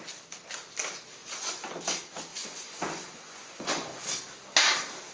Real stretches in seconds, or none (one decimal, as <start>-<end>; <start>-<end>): 0.0-1.2; 1.7-2.3; 4.0-5.1